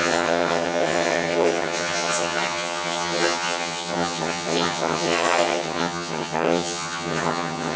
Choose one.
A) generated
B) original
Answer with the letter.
A